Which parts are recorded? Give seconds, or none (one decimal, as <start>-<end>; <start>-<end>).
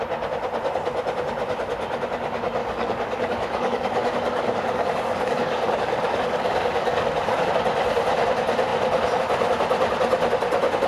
0.0-2.6; 7.5-10.9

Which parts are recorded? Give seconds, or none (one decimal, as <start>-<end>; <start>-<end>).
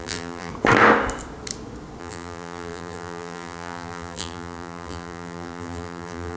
0.5-2.0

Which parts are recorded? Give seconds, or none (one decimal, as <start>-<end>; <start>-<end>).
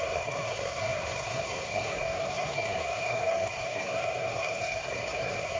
none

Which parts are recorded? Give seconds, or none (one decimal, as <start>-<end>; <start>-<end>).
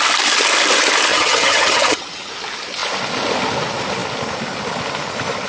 0.0-1.1; 2.3-5.5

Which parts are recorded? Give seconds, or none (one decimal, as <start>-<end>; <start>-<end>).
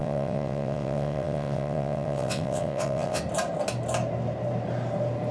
3.2-5.3